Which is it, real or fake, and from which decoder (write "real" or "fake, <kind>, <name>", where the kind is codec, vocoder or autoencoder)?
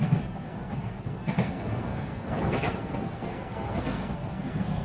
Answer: fake, codec, SNAC